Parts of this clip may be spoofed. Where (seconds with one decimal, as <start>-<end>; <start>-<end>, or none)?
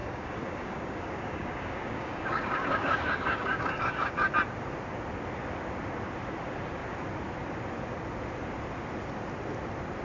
0.0-4.3